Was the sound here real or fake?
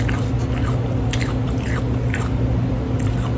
real